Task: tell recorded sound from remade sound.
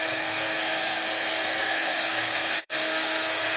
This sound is remade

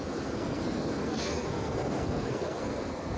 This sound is remade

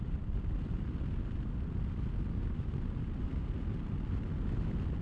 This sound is recorded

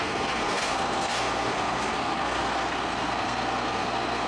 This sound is remade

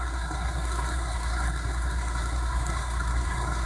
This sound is remade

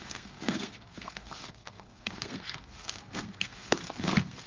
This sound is remade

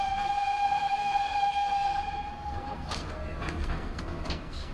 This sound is remade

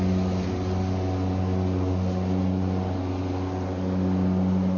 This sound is recorded